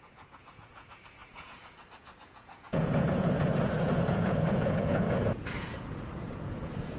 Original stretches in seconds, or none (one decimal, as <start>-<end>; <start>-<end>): none